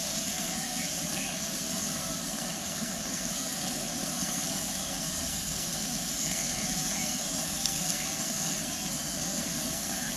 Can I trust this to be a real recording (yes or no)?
no